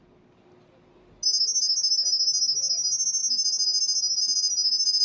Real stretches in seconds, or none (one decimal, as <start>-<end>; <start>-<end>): 0.0-5.0